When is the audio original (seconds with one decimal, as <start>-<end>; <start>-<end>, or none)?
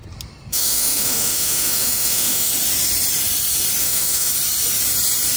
0.0-0.5; 2.5-3.8; 4.3-5.4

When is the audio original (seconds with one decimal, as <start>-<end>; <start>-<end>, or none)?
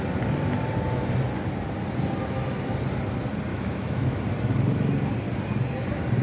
0.0-3.5; 4.2-6.2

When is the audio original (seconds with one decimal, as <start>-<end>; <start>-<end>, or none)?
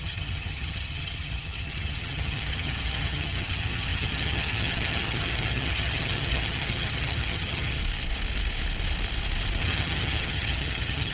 7.8-9.6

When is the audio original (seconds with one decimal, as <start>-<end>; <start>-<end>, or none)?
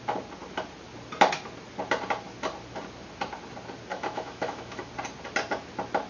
0.0-3.9; 4.9-6.1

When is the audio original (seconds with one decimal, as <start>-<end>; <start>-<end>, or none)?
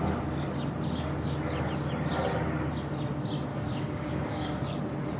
0.0-3.5; 4.8-5.2